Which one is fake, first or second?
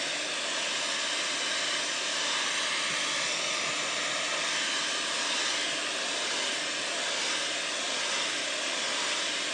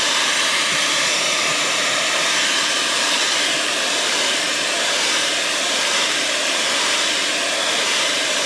second